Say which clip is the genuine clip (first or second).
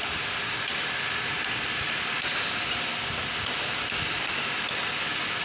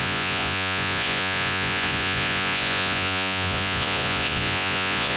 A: first